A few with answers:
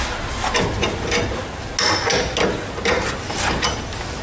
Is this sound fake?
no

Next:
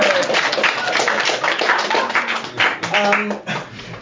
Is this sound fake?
no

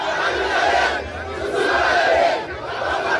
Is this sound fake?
no